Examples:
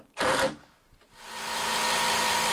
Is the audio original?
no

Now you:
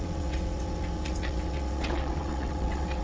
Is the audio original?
no